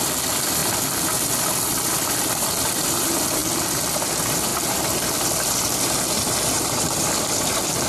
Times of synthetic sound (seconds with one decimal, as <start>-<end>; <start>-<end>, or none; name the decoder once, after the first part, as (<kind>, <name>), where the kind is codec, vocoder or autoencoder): 0.0-3.4 (vocoder, BigVGAN v2); 4.1-4.5; 5.2-7.9